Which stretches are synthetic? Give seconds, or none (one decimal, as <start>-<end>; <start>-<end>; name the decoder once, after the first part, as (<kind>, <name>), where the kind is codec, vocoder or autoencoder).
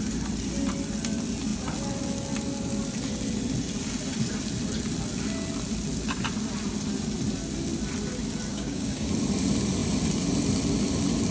8.5-9.1 (codec, DAC)